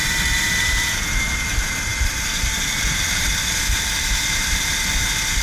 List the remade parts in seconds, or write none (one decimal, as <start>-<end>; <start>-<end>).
0.0-5.4